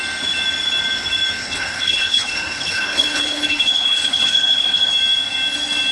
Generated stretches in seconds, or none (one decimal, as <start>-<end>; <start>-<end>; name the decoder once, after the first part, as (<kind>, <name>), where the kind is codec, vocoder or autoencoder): 1.4-4.9 (codec, HILCodec)